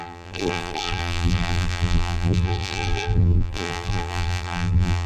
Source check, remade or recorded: remade